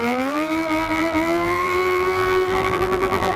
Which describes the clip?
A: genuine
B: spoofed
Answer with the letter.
B